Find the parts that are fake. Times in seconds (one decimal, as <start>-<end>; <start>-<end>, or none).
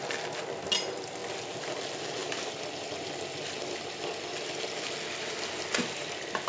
1.2-1.7